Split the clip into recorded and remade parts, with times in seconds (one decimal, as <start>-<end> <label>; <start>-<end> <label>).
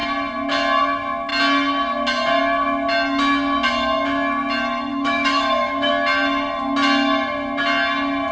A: 0.0-4.9 recorded; 4.9-5.9 remade; 5.9-8.3 recorded